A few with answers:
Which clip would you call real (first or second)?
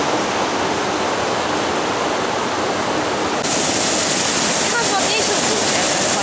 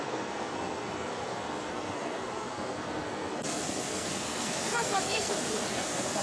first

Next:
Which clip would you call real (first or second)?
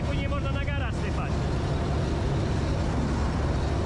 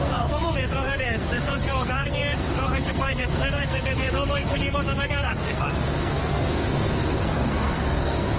first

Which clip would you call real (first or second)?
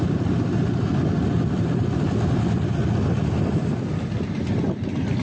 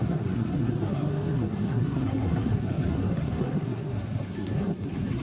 first